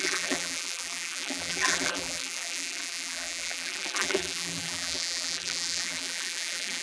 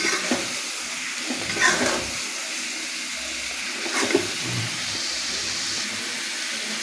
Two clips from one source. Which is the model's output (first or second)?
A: first